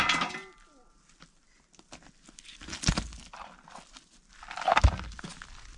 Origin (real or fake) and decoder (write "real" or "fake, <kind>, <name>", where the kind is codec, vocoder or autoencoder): real